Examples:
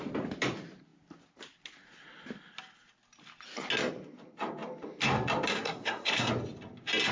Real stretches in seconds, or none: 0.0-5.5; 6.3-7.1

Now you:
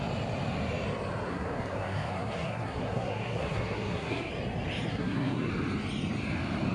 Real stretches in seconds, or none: 0.0-1.3; 4.3-4.9; 5.5-6.7

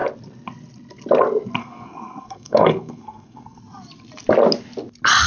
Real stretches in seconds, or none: 0.0-1.6; 3.6-5.3